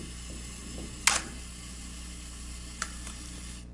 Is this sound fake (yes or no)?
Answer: no